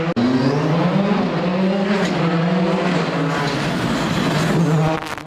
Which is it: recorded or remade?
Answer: recorded